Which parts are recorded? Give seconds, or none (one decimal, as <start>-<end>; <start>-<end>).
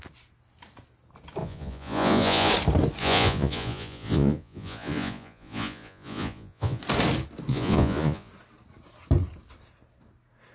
0.0-1.4; 2.5-3.0; 6.8-7.5; 8.3-10.5